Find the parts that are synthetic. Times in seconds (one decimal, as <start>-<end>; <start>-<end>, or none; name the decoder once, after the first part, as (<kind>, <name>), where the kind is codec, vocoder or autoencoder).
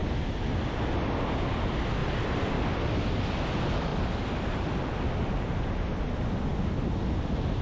2.0-2.5 (vocoder, BigVGAN v2)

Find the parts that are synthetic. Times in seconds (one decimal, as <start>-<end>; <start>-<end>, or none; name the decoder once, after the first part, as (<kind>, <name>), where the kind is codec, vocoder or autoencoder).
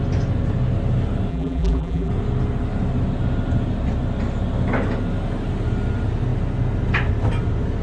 1.3-2.1 (vocoder, BigVGAN v2)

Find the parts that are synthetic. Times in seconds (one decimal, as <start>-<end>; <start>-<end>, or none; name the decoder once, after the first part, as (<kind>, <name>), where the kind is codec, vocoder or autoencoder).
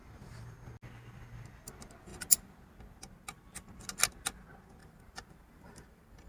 4.8-6.3 (vocoder, BigVGAN v2)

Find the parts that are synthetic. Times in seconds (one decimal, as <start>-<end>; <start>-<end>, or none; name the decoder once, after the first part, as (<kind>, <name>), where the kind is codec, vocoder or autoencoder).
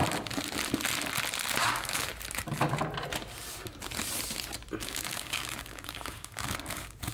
1.6-2.1 (codec, DAC); 4.8-7.1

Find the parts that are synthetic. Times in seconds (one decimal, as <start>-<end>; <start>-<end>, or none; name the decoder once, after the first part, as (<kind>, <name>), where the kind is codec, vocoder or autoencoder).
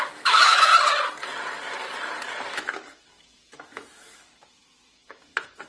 0.0-0.7 (autoencoder, DAC-VAE); 2.5-5.7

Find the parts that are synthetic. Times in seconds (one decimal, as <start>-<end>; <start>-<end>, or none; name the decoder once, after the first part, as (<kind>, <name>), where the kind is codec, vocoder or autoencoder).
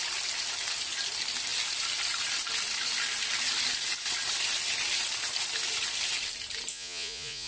6.7-7.5 (vocoder, Vocos)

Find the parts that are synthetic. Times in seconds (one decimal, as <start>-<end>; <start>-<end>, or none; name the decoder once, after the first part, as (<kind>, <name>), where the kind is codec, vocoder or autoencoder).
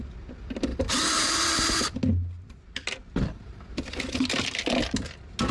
0.7-1.4 (vocoder, BigVGAN v2); 3.0-4.6